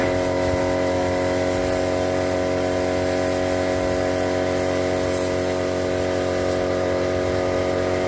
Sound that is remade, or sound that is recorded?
recorded